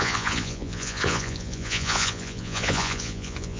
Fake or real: fake